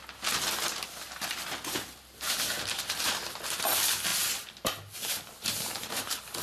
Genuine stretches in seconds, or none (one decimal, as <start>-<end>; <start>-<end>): 0.0-6.4